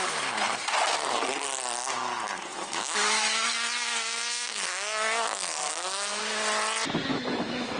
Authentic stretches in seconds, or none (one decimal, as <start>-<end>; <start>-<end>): 0.0-2.5; 6.2-7.1